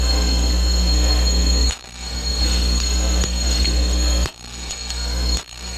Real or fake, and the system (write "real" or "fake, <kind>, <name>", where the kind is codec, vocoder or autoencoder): fake, codec, SNAC